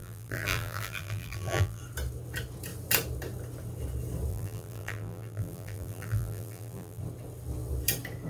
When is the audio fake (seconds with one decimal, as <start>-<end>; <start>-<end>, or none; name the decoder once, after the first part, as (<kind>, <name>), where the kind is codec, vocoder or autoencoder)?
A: 0.0-1.8 (vocoder, BigVGAN v2); 4.3-7.0